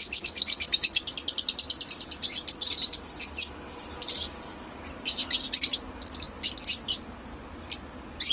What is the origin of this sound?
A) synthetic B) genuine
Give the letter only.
B